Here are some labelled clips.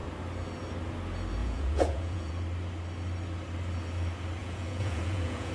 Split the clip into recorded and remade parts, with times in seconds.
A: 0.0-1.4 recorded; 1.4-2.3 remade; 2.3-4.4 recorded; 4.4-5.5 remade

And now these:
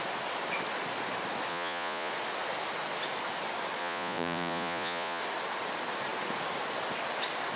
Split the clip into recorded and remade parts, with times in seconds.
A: 0.0-1.5 recorded; 1.5-2.1 remade; 2.1-3.8 recorded; 3.8-5.2 remade; 5.2-7.6 recorded

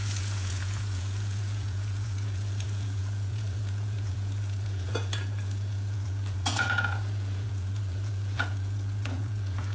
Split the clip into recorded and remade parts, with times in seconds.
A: 0.0-9.7 remade

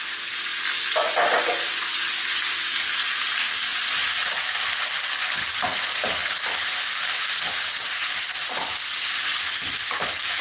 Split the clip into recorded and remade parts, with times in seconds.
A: 0.0-10.4 recorded